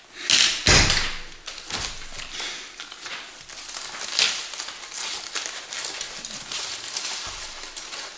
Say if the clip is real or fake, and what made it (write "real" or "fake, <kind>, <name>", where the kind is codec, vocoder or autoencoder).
real